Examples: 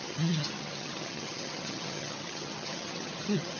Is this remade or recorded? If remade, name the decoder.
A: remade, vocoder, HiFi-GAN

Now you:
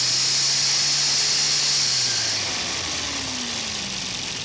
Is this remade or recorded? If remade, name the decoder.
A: recorded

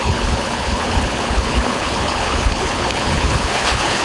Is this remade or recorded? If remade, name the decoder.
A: remade, codec, HILCodec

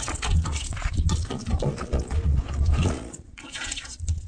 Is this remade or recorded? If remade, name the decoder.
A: remade, vocoder, Vocos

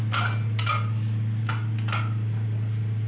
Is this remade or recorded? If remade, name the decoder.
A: recorded